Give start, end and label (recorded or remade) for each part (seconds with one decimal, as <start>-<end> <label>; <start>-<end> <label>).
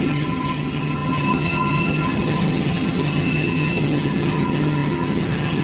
0.0-5.6 remade